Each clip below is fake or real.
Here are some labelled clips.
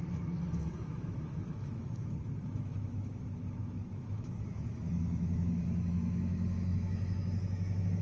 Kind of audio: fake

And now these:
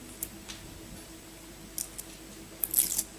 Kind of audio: real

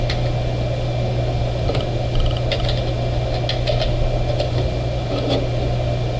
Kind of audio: real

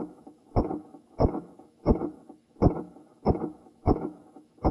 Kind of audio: fake